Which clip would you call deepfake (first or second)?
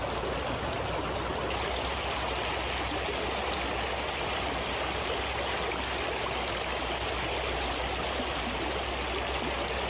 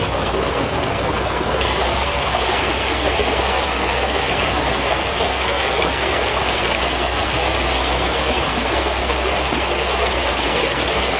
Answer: second